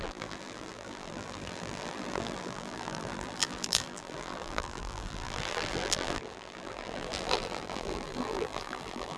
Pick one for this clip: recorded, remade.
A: remade